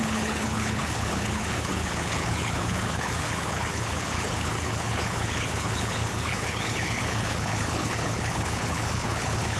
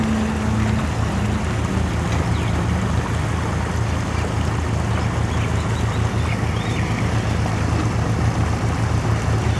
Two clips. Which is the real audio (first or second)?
second